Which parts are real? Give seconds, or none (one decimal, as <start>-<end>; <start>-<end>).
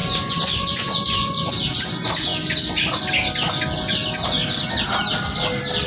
1.5-5.9